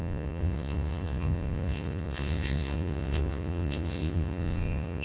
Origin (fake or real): fake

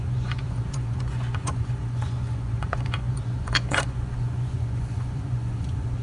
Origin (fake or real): fake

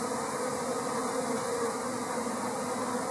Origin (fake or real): real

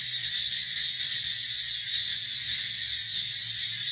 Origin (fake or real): real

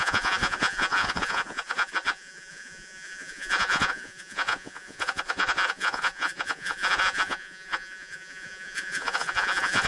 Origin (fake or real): fake